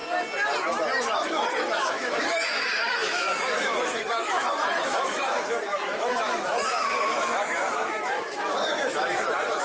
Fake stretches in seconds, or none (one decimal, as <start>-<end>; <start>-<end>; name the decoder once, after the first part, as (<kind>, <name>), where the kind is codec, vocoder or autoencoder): 1.0-9.6 (autoencoder, DAC-VAE)